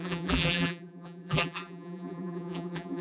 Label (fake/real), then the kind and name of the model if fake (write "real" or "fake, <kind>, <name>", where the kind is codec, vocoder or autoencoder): fake, vocoder, BigVGAN v2